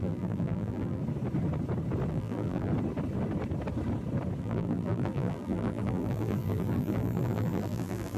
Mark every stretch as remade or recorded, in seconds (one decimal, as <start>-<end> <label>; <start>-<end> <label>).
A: 0.0-1.0 remade; 1.0-2.1 recorded; 2.1-2.7 remade; 2.7-4.4 recorded; 4.4-8.2 remade